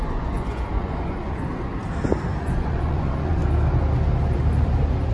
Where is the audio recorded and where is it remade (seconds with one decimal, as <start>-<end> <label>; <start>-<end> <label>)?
0.0-1.7 remade; 1.7-2.4 recorded; 2.4-3.4 remade; 3.4-5.1 recorded